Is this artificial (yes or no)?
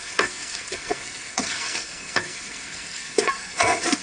yes